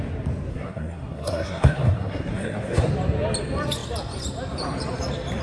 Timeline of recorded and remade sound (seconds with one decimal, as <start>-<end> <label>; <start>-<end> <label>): 0.0-0.5 recorded; 0.5-2.9 remade; 2.9-5.4 recorded